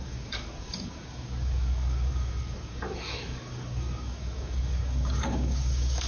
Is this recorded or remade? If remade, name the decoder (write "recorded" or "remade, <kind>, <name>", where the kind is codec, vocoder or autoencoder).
remade, codec, DAC